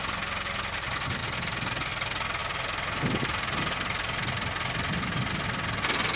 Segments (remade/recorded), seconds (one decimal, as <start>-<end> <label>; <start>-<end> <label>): 0.0-6.2 recorded